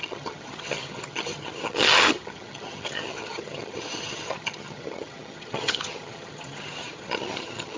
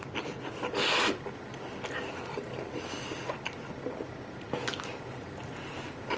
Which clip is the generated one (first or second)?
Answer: first